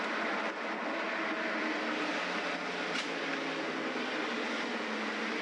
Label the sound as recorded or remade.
recorded